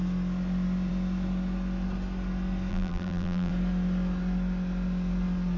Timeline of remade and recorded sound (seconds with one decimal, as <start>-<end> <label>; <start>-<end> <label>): 0.0-2.7 recorded; 2.7-3.5 remade; 3.5-5.6 recorded

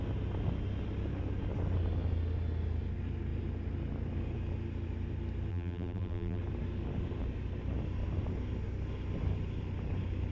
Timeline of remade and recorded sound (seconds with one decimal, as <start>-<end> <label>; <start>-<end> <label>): 0.0-5.5 recorded; 5.5-6.4 remade; 6.4-10.3 recorded

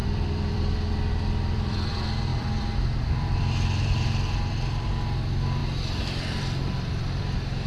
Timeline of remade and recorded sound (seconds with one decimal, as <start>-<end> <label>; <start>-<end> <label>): 0.0-1.9 remade; 1.9-2.3 recorded; 2.3-4.9 remade; 4.9-5.6 recorded; 5.6-7.2 remade; 7.2-7.7 recorded

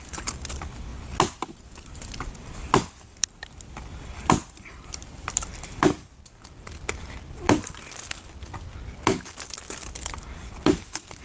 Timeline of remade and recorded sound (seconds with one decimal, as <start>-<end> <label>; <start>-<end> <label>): 0.0-0.9 remade; 0.9-1.9 recorded; 1.9-11.2 remade